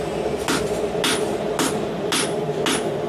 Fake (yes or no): no